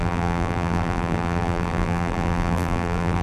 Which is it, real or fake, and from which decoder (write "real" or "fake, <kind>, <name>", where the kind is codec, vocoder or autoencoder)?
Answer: fake, vocoder, BigVGAN v2